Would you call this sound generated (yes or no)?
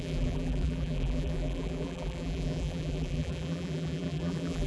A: yes